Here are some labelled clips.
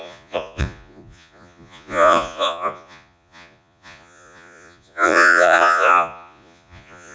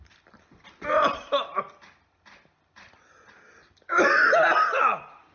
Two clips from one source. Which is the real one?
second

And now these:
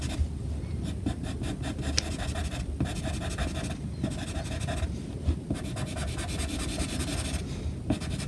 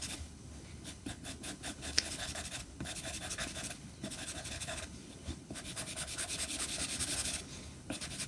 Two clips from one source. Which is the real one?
first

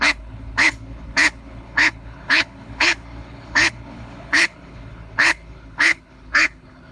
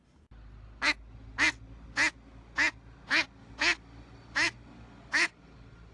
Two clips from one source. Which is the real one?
second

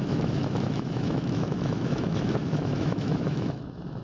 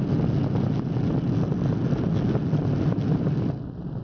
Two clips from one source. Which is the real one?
second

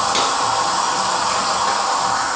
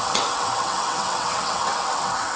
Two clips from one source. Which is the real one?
first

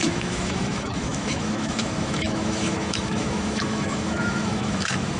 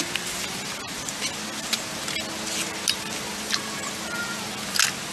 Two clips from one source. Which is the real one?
second